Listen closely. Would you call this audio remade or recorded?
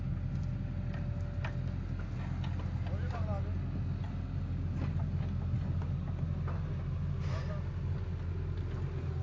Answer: recorded